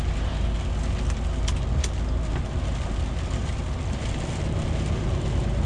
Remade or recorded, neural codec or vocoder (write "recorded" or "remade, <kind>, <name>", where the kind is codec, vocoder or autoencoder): recorded